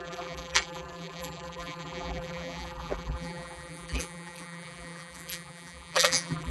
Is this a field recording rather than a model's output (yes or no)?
no